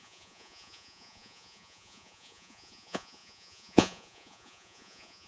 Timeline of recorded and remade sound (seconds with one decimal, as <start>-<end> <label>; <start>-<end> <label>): 0.0-5.3 remade